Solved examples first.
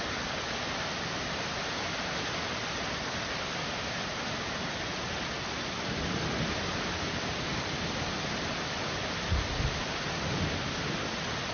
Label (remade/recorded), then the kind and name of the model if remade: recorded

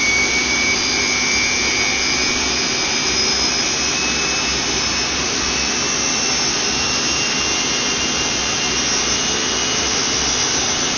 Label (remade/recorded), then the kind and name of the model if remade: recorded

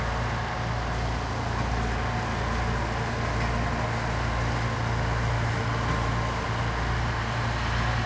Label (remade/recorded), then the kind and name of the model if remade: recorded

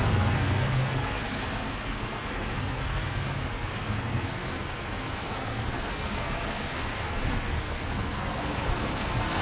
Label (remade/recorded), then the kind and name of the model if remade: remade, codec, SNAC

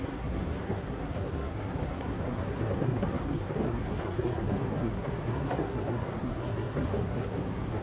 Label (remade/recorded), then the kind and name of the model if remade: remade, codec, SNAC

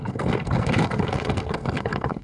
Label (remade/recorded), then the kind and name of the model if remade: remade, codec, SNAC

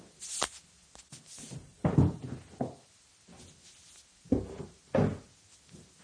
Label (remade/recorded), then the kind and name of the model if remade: recorded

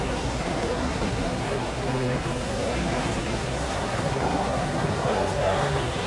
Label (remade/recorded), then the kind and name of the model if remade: remade, codec, SNAC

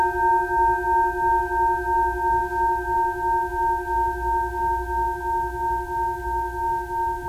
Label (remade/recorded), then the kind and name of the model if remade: recorded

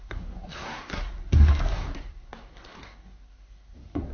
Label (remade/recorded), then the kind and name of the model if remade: remade, codec, SNAC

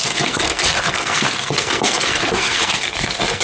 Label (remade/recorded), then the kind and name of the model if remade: remade, codec, SNAC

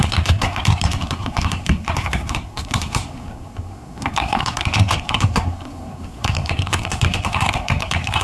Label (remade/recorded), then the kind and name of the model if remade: remade, codec, SNAC